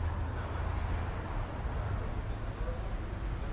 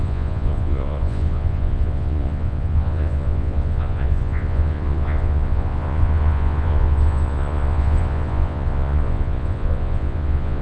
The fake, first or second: second